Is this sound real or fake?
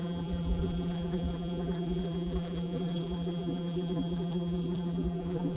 fake